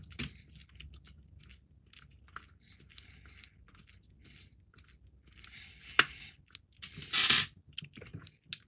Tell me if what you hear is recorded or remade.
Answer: recorded